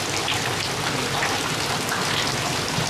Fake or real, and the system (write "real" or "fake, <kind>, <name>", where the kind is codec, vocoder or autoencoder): real